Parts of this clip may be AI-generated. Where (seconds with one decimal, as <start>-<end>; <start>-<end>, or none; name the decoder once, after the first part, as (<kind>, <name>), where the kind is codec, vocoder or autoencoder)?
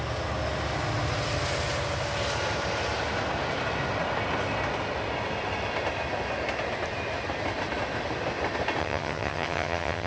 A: 8.8-10.1 (vocoder, HiFi-GAN)